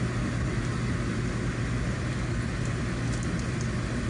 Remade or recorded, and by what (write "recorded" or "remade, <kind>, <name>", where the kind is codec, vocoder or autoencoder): recorded